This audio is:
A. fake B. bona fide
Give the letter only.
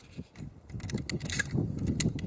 B